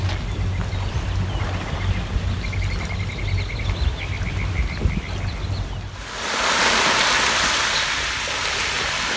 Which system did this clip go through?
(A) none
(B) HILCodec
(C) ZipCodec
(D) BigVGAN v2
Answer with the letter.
A